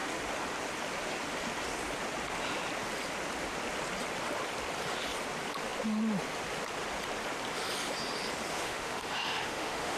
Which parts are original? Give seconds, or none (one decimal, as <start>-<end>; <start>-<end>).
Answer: 0.0-8.5